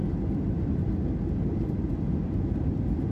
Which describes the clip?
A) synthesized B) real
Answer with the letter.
B